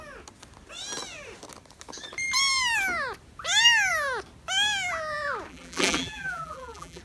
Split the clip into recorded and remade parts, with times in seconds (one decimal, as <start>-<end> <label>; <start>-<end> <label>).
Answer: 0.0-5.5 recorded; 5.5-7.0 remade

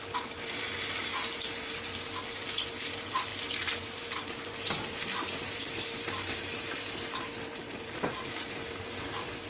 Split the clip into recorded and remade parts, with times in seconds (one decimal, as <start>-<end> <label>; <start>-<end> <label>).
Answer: 0.0-9.5 remade

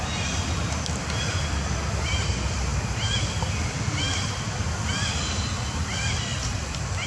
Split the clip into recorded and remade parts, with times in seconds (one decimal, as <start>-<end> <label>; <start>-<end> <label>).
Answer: 0.0-2.7 recorded; 2.7-4.0 remade; 4.0-6.3 recorded; 6.3-7.1 remade

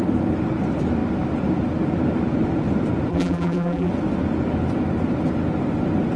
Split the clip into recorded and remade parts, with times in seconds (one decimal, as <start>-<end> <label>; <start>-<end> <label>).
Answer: 0.0-3.1 recorded; 3.1-3.9 remade; 3.9-6.2 recorded

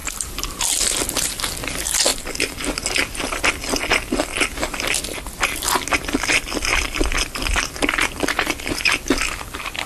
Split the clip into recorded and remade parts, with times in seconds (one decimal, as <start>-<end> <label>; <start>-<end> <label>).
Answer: 0.0-0.6 remade; 0.6-6.7 recorded; 6.7-9.9 remade

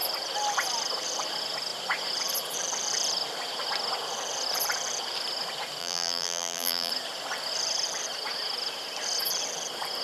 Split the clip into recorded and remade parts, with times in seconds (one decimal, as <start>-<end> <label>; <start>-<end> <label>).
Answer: 0.0-5.8 recorded; 5.8-6.9 remade; 6.9-10.0 recorded